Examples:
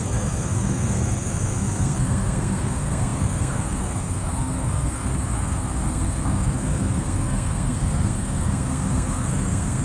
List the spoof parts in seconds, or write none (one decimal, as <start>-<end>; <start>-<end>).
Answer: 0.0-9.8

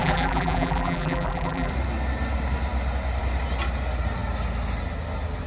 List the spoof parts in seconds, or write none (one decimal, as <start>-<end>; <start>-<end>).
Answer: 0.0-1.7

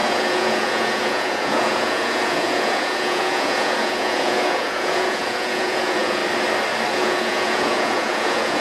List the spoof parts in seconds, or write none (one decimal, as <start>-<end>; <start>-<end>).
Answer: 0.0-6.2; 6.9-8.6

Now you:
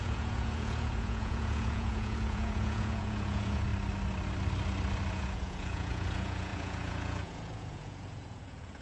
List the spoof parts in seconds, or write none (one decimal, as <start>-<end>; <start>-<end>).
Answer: 0.0-3.7; 5.1-8.8

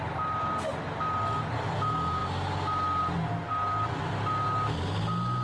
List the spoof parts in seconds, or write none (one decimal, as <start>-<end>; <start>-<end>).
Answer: none

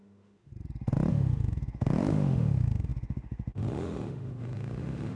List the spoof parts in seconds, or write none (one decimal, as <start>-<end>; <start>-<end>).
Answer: 0.0-0.5; 1.1-5.2

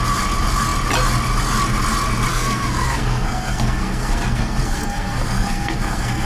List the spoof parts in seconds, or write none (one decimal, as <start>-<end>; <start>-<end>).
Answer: 2.3-6.3

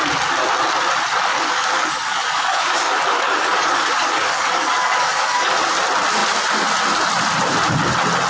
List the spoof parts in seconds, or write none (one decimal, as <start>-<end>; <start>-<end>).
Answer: 1.3-5.5